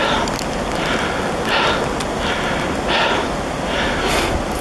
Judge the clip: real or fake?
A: real